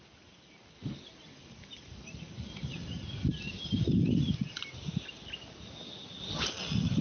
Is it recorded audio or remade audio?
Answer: recorded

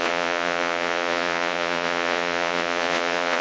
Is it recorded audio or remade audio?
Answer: remade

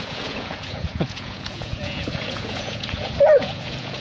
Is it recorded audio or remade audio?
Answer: remade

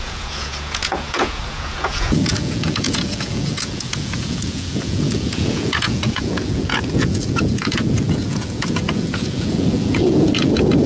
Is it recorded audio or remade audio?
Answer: remade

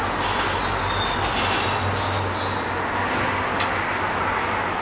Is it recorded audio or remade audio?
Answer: recorded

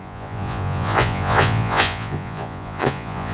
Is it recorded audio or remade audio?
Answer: remade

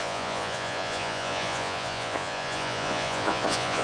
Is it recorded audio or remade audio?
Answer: remade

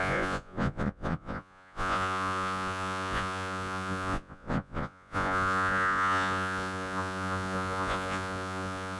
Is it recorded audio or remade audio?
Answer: remade